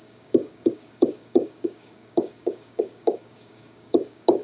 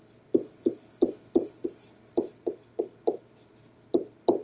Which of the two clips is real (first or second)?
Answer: second